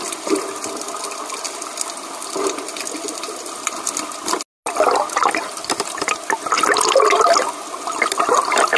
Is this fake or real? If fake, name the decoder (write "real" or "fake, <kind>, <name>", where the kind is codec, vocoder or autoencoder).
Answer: real